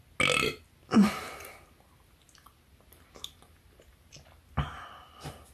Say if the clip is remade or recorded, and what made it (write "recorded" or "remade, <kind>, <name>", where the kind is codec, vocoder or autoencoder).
recorded